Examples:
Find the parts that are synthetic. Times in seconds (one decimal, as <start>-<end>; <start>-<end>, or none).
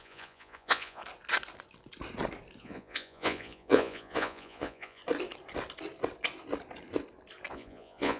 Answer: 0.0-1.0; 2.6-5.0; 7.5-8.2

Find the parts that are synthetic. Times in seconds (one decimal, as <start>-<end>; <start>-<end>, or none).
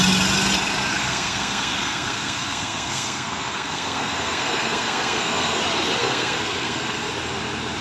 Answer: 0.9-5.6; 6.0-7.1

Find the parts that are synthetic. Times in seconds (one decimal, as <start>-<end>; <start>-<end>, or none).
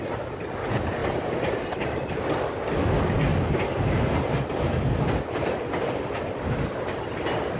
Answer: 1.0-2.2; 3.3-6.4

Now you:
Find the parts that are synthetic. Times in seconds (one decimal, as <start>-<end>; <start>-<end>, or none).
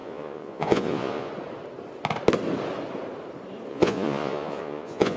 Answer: 0.0-1.3; 3.7-5.2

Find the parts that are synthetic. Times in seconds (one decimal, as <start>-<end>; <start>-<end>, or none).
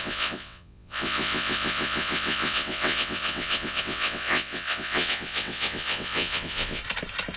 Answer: 0.0-6.8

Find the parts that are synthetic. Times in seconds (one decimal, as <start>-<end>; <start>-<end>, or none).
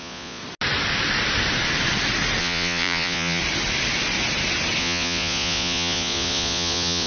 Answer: 0.0-0.4; 2.4-3.4; 4.8-7.1